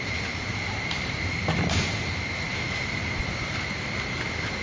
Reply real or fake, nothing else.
fake